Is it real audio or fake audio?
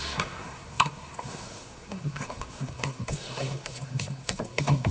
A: fake